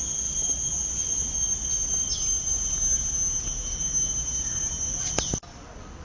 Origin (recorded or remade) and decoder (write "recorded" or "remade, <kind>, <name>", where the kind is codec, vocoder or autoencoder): recorded